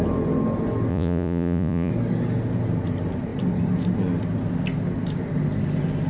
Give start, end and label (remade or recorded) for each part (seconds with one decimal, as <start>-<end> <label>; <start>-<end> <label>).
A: 0.0-0.9 recorded; 0.9-1.9 remade; 1.9-6.1 recorded